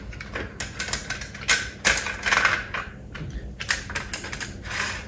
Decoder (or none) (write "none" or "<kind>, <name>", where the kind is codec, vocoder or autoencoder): none